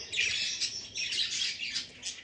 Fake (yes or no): no